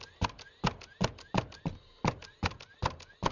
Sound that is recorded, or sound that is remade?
recorded